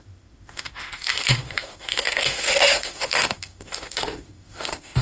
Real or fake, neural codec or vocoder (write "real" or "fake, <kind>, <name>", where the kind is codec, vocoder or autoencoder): fake, autoencoder, DAC-VAE